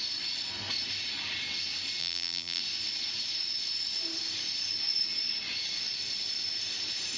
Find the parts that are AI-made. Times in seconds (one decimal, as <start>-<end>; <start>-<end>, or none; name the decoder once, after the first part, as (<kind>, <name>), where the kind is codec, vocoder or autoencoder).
2.0-2.6 (vocoder, BigVGAN v2)